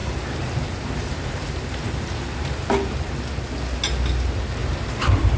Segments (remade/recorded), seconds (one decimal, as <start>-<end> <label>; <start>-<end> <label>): 0.0-3.2 remade; 3.2-4.6 recorded; 4.6-5.4 remade